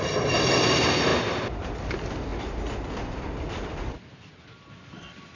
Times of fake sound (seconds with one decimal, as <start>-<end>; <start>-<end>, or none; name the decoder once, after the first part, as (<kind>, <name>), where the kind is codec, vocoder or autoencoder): none